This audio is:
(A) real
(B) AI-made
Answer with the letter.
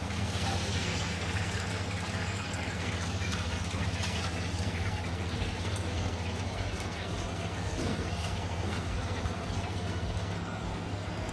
B